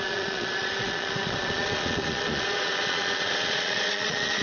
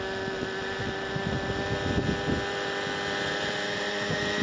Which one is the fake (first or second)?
first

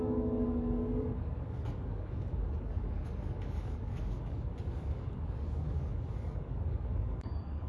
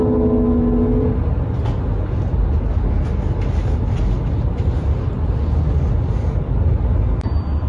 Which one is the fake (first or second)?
first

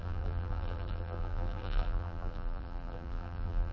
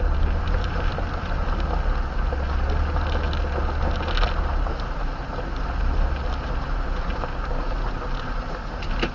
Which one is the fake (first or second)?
first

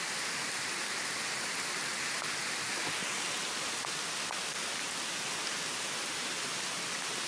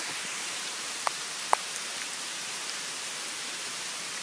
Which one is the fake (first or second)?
second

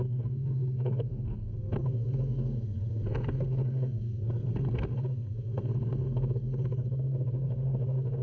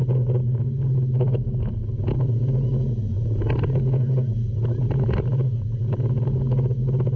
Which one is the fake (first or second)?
first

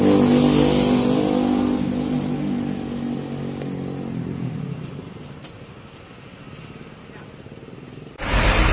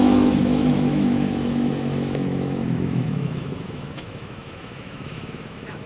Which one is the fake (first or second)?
second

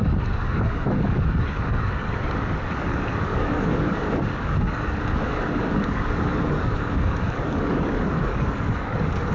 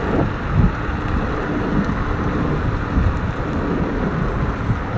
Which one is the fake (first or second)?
first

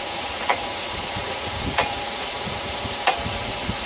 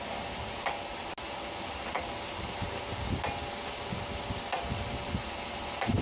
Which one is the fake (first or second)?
first